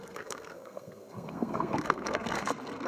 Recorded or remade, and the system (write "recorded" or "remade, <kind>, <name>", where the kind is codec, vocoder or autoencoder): remade, codec, SNAC